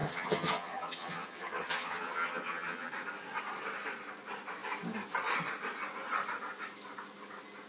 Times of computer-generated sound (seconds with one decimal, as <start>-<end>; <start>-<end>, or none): 0.0-2.9